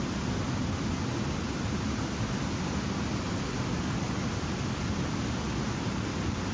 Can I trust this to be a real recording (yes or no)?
yes